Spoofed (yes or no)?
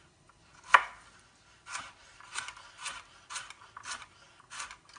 no